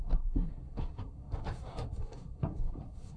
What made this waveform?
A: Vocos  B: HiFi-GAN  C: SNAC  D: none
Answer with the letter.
C